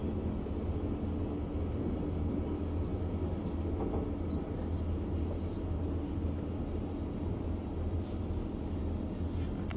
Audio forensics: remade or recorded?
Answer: recorded